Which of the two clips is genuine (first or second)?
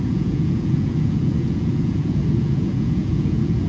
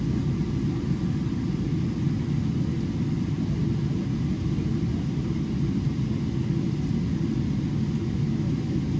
second